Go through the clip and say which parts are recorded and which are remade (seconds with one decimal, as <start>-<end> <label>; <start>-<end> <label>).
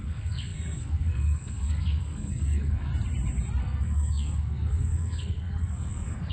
0.0-2.9 remade; 2.9-3.6 recorded; 3.6-6.3 remade